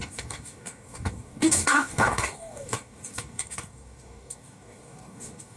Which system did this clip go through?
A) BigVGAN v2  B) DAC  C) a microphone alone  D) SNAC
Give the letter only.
B